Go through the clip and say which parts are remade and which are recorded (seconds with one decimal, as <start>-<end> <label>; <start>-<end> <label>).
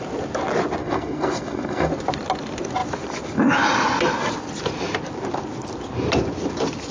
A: 0.0-0.8 recorded; 0.8-1.9 remade; 1.9-6.9 recorded